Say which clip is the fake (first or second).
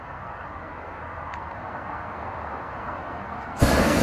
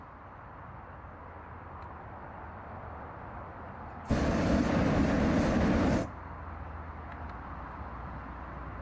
first